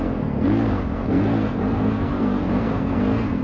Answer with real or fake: fake